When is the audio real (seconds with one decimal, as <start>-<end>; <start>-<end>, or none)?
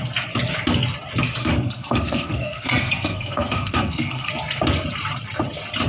0.0-1.4; 4.3-5.9